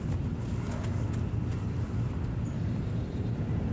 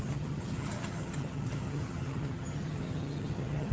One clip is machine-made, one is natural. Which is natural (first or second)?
first